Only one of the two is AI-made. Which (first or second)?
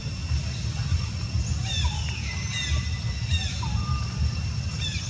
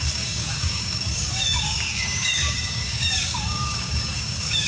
second